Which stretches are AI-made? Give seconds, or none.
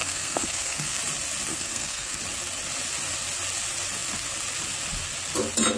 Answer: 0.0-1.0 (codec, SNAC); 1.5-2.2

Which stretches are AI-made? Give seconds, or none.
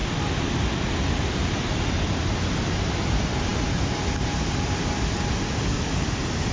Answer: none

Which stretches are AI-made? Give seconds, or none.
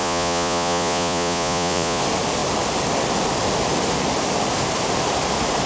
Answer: 0.0-2.0 (vocoder, Vocos)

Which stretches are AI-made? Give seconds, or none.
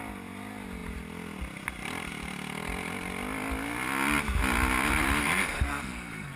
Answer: 5.2-6.4 (codec, SNAC)